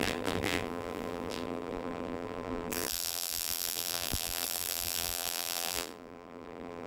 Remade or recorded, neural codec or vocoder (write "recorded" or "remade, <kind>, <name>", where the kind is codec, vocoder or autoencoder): remade, vocoder, BigVGAN v2